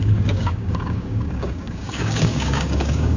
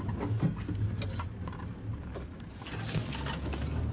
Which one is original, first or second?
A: second